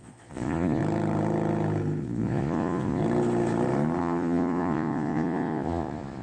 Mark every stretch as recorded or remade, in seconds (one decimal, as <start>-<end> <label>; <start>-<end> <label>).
0.0-0.8 remade; 0.8-2.0 recorded; 2.0-3.0 remade; 3.0-4.0 recorded; 4.0-6.2 remade